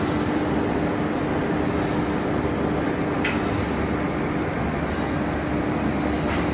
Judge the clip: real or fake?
real